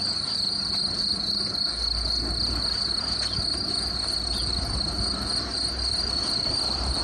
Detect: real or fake real